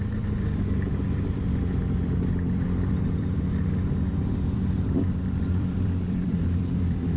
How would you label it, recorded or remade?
remade